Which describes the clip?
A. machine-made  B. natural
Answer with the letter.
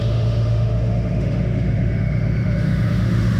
A